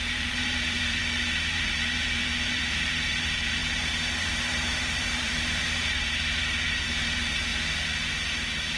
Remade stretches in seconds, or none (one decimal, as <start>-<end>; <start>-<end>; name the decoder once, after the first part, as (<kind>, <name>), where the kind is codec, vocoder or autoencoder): 0.0-1.0 (vocoder, BigVGAN v2); 1.5-7.5; 8.1-8.8